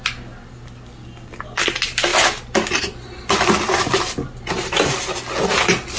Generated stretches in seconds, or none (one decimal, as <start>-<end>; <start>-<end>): none